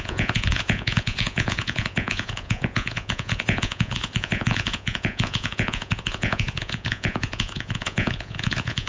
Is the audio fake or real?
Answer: fake